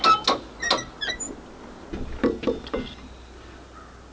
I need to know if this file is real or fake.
real